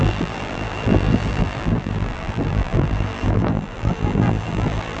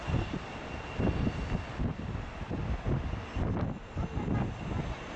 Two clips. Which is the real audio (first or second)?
second